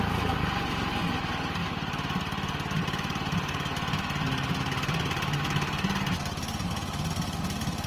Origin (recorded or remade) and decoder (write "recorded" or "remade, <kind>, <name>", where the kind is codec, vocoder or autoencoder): recorded